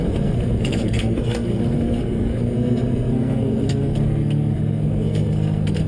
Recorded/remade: remade